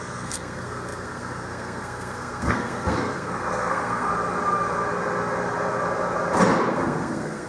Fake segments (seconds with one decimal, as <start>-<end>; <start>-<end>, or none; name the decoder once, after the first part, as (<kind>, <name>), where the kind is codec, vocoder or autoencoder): 0.0-4.1 (codec, SNAC); 6.7-7.5